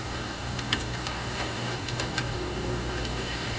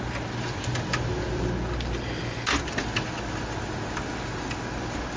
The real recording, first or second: second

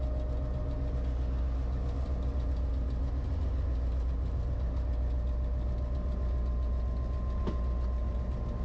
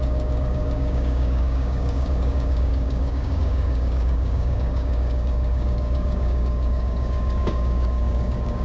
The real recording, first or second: first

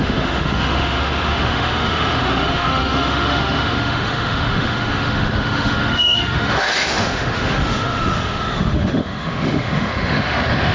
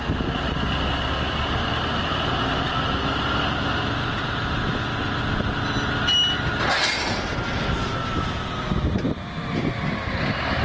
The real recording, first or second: second